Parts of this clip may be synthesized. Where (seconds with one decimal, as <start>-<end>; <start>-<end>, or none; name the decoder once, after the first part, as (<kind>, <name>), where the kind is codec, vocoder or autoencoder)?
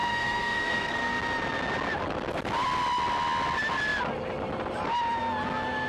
0.0-1.2 (codec, SNAC)